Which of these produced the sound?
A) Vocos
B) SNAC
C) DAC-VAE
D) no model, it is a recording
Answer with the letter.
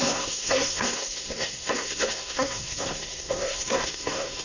B